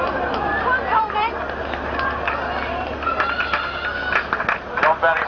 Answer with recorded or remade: recorded